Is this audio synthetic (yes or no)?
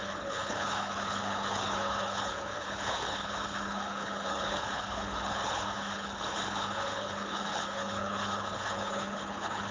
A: yes